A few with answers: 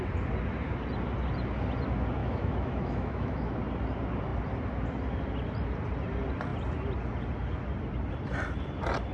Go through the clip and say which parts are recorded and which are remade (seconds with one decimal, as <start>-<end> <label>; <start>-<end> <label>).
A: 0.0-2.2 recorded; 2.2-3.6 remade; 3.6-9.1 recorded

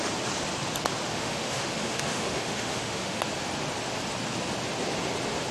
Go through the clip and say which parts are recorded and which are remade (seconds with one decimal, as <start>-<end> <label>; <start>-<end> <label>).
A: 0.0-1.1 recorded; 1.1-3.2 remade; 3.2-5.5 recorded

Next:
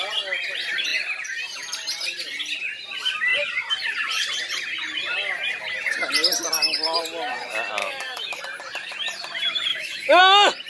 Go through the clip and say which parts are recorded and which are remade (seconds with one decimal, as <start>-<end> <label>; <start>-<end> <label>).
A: 0.0-7.8 recorded; 7.8-8.4 remade; 8.4-9.7 recorded; 9.7-10.2 remade; 10.2-10.7 recorded